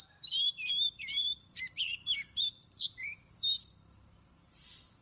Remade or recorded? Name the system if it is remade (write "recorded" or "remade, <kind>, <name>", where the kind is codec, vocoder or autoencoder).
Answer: remade, vocoder, BigVGAN v2